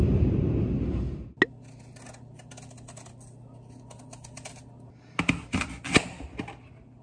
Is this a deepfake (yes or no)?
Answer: no